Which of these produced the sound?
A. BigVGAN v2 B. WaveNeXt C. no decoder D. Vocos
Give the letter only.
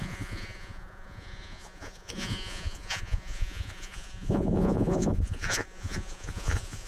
D